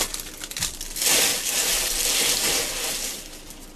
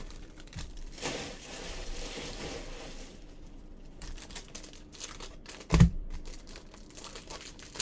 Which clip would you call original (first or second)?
first